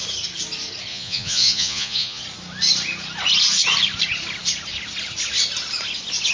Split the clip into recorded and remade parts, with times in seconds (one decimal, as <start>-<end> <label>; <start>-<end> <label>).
0.0-0.9 recorded; 0.9-2.2 remade; 2.2-6.3 recorded